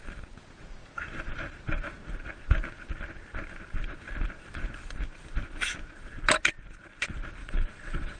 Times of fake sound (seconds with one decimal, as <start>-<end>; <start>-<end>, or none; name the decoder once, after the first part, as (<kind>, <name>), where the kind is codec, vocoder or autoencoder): 7.4-8.2 (vocoder, WaveNeXt)